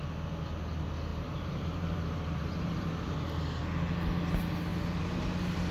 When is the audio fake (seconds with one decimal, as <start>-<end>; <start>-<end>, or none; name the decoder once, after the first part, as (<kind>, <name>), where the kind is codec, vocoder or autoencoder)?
1.1-2.9 (vocoder, BigVGAN v2)